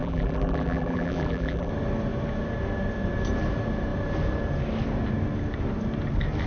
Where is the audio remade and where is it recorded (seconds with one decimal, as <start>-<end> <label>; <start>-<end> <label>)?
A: 0.0-1.7 remade; 1.7-6.5 recorded